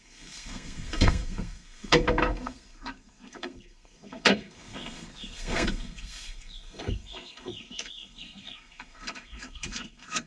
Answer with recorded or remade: remade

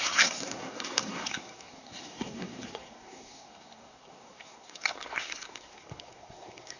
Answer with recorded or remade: remade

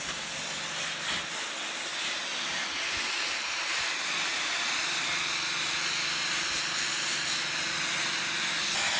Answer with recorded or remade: recorded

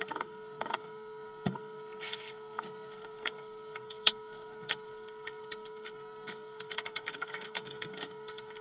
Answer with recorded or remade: remade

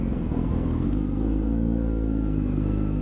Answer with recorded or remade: remade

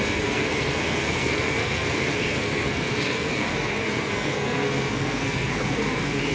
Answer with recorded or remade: remade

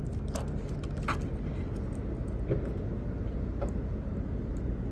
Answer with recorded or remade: recorded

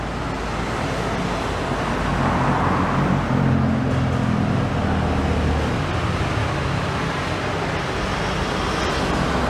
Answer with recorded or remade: recorded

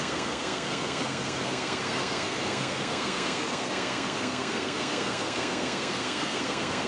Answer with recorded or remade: remade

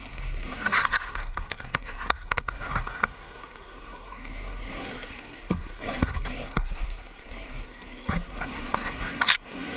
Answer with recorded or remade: remade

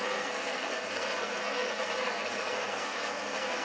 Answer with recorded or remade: remade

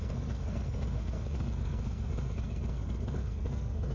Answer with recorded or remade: remade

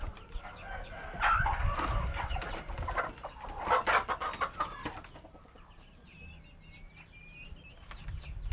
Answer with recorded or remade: recorded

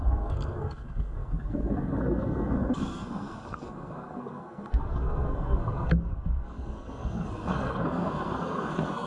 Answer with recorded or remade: remade